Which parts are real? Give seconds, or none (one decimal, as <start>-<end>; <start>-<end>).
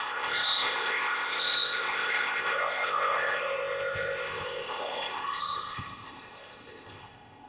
none